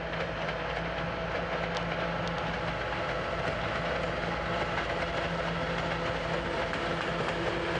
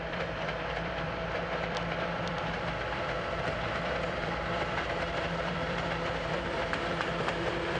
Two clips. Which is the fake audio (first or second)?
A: second